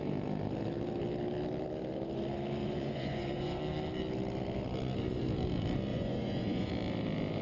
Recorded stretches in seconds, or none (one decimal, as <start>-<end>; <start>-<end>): 0.0-2.6; 3.6-5.9; 6.7-7.4

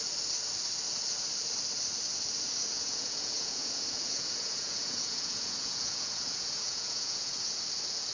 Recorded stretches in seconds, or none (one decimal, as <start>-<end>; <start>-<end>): 0.0-2.7; 7.6-8.1

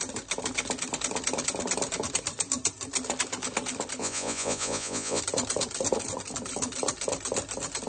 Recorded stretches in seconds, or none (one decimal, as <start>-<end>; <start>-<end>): 0.0-4.0; 5.2-7.9

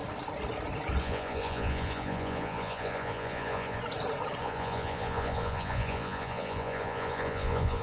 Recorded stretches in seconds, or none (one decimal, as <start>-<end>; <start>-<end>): 0.0-1.0; 3.8-4.4

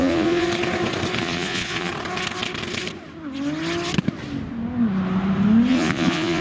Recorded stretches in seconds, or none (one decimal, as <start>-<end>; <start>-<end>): 0.4-1.2; 1.9-5.7

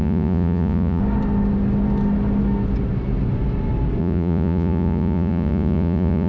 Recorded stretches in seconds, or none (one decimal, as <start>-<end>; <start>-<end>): 1.0-4.0

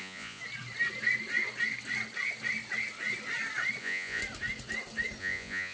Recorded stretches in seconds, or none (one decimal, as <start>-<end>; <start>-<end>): 0.4-3.8; 4.2-5.2

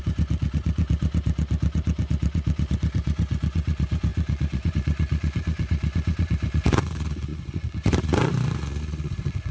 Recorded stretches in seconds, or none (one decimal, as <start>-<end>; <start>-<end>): none